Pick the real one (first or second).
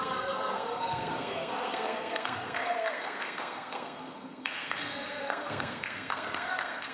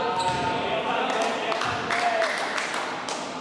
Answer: second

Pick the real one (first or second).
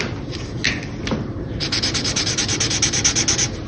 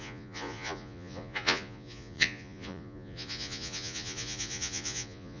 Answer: first